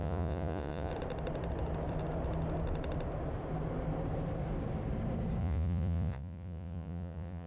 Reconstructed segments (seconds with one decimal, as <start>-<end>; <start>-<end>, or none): 0.0-0.9; 5.4-7.5

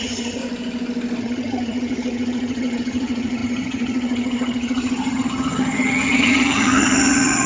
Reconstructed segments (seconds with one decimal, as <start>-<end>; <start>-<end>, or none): 0.0-0.4; 1.2-7.5

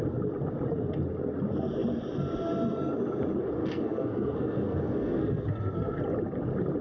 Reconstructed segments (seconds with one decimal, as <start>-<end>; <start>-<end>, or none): 3.6-6.0

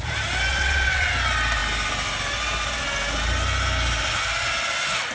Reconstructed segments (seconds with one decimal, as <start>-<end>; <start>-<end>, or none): 0.5-1.1

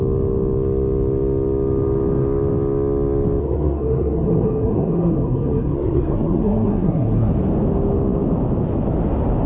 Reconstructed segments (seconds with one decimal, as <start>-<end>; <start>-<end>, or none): 3.4-7.3